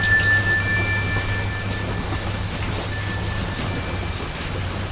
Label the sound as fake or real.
real